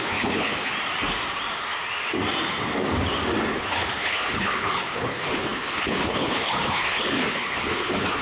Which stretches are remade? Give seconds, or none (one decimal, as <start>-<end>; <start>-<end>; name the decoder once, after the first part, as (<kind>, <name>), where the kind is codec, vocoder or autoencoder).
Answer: 0.0-0.7 (codec, HILCodec); 3.6-8.2